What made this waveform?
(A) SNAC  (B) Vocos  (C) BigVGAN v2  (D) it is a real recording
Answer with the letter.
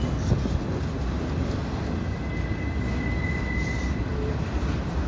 D